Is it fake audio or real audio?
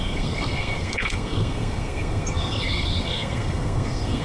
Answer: fake